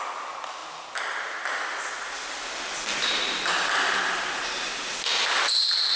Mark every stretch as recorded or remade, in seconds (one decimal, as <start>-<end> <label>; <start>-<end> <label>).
0.0-6.0 recorded

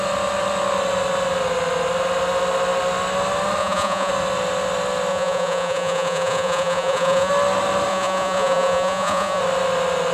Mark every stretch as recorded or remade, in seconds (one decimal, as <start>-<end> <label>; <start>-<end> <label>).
0.0-3.6 recorded; 3.6-4.1 remade; 4.1-5.1 recorded; 5.1-7.3 remade; 7.3-7.9 recorded; 7.9-9.4 remade; 9.4-10.1 recorded

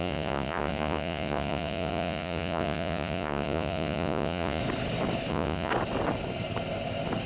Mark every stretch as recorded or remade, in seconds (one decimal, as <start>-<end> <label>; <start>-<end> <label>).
0.0-4.6 remade; 4.6-5.3 recorded; 5.3-5.7 remade; 5.7-7.3 recorded